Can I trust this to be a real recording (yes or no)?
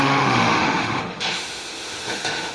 no